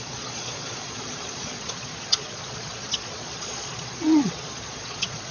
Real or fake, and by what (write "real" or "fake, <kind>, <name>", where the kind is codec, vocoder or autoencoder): fake, vocoder, Vocos